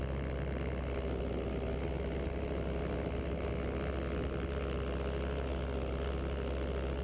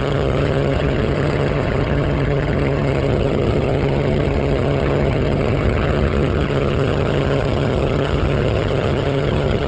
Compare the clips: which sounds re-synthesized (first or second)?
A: second